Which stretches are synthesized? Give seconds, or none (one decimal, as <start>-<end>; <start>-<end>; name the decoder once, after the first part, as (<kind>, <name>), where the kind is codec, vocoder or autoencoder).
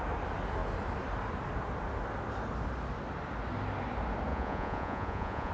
4.3-5.5 (vocoder, Vocos)